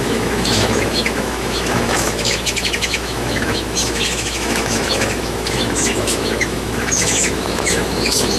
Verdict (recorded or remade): remade